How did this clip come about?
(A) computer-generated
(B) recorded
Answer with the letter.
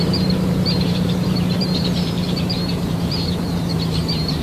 A